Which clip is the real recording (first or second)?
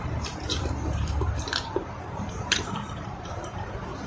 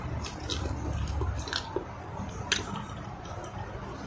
second